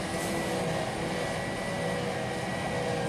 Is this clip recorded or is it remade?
recorded